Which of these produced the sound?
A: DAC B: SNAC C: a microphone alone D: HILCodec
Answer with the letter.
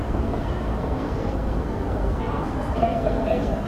B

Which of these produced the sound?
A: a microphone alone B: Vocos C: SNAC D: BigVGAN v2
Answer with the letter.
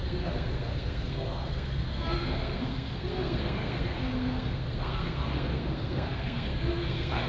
C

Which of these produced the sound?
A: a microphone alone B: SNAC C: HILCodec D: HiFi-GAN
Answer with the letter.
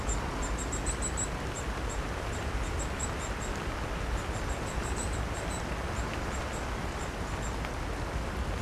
A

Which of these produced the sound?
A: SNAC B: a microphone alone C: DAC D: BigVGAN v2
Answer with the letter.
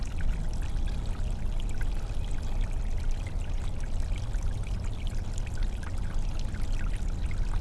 B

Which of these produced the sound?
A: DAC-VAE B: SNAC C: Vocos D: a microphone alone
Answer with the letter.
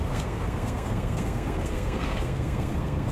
B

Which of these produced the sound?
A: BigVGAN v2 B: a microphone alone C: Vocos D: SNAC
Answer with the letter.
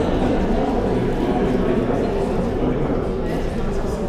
B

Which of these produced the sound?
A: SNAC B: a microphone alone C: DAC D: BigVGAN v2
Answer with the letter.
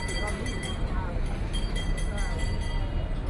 B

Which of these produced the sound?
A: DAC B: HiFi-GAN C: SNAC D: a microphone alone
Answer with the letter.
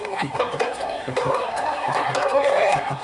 C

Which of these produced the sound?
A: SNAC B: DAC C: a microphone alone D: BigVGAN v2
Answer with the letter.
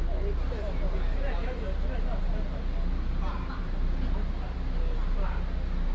C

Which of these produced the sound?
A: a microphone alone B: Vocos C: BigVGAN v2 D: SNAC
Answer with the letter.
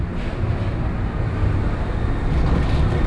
A